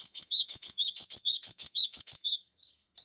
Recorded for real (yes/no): no